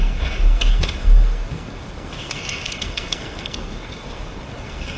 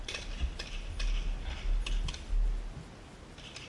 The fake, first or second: first